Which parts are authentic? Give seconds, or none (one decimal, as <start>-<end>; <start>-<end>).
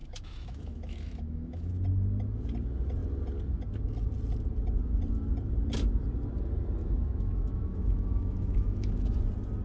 1.7-6.8; 9.2-9.6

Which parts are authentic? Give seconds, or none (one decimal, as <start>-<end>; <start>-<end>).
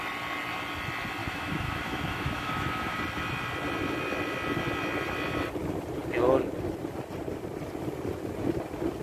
0.0-1.2; 3.0-9.0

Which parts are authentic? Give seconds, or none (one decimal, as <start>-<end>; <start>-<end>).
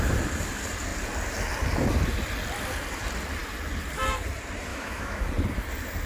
0.0-4.7; 5.2-6.1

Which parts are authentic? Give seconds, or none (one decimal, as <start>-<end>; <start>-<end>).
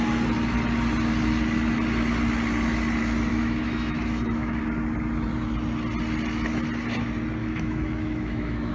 0.0-3.3; 4.6-7.4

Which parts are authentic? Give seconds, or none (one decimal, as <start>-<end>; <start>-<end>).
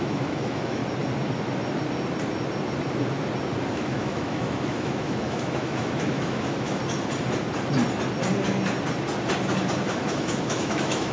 0.8-3.7; 6.8-9.9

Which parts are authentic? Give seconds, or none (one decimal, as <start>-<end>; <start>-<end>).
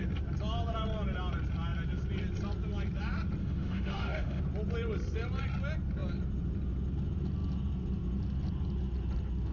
0.0-3.4; 4.4-9.5